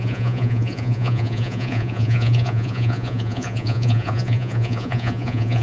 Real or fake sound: fake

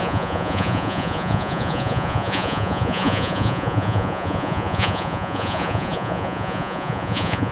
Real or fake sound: fake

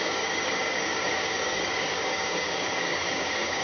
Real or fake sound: fake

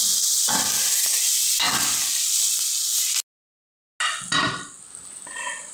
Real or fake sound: real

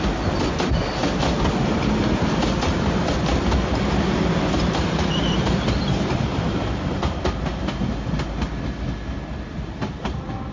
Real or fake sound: real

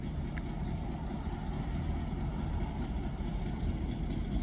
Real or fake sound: real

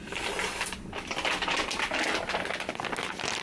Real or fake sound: real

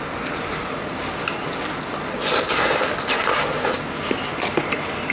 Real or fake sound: real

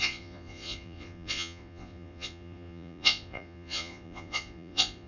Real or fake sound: fake